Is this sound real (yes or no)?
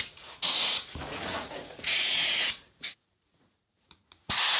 no